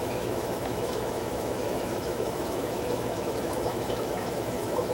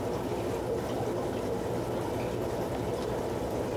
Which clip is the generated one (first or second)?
first